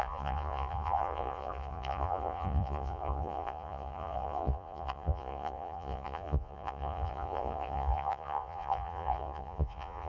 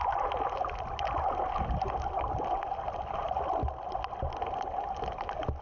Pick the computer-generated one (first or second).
first